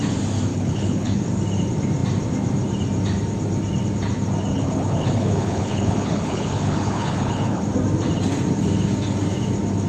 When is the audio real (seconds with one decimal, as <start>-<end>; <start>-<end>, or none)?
0.0-0.5; 1.2-4.5; 7.6-9.9